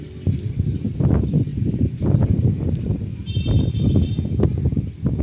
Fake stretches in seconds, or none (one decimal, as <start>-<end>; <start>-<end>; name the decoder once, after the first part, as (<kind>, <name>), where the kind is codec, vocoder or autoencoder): none